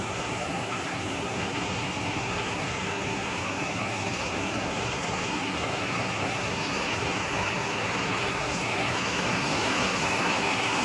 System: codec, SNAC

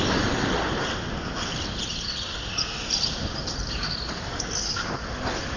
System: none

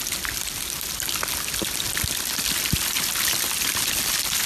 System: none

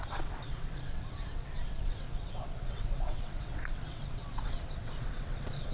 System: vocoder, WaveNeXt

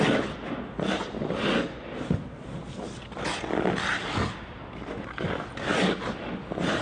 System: none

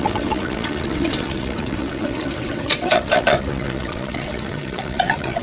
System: vocoder, WaveNeXt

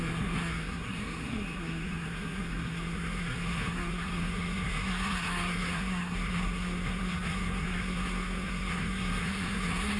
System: codec, SNAC